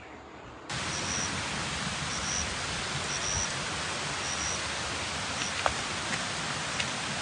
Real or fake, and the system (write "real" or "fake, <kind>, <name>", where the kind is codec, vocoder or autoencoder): real